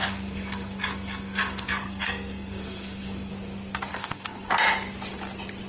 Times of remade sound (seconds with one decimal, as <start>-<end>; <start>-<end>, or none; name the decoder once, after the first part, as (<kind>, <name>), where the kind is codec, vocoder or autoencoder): 0.0-3.3 (codec, SNAC); 3.9-4.5